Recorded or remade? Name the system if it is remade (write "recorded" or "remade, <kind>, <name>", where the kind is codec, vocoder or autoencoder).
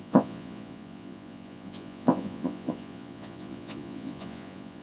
remade, vocoder, Vocos